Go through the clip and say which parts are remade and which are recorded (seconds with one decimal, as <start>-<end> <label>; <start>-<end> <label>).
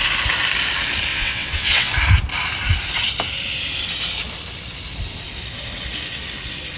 0.0-1.1 recorded; 1.1-1.9 remade; 1.9-6.8 recorded